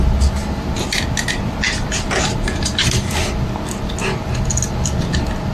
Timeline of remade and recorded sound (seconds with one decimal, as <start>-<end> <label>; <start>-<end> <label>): 0.0-5.5 recorded

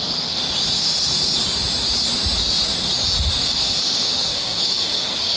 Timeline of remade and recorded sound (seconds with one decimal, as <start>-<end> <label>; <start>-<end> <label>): 0.0-0.4 remade; 0.4-3.4 recorded; 3.4-5.4 remade

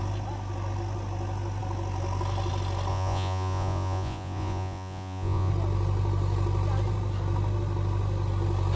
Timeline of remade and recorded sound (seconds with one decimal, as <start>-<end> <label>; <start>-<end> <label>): 0.0-2.9 recorded; 2.9-5.5 remade; 5.5-8.8 recorded

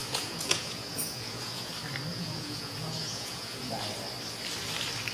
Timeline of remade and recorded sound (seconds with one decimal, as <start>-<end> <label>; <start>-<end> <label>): 0.0-1.7 remade; 1.7-2.1 recorded; 2.1-3.7 remade; 3.7-5.1 recorded

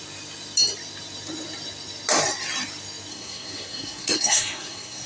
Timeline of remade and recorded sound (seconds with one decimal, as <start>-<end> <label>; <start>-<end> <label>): 0.0-3.1 recorded; 3.1-5.1 remade